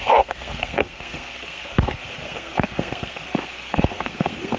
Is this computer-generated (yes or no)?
yes